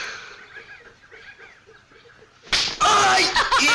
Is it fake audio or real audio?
real